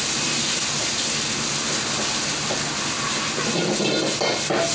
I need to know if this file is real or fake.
real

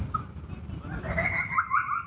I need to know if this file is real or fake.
real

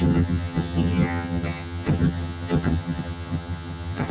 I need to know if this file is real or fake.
fake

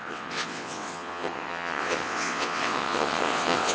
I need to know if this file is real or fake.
fake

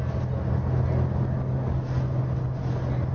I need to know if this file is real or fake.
real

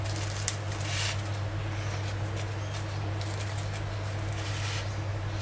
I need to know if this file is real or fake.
real